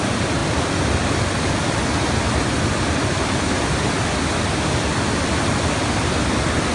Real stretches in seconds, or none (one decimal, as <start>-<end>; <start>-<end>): 0.0-6.7